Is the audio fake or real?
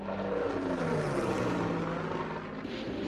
real